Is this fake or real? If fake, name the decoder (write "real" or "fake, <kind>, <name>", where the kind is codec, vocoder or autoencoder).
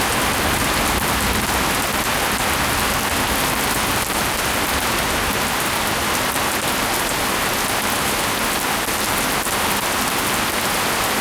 fake, vocoder, BigVGAN v2